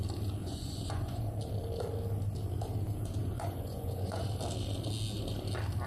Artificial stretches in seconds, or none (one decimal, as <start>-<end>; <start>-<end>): 0.4-1.2; 3.2-4.3